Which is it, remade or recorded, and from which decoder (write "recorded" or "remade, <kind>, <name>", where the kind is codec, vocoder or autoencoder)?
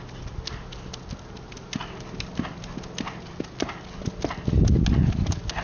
recorded